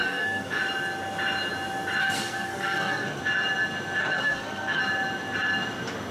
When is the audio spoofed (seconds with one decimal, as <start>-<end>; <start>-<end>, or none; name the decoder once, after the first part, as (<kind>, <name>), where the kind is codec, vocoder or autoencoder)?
0.0-0.6 (codec, SNAC); 2.0-3.2; 4.0-4.8